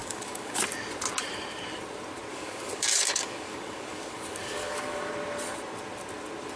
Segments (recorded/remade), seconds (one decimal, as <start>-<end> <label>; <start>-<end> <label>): 0.0-0.6 remade; 0.6-2.3 recorded; 2.3-5.1 remade; 5.1-6.6 recorded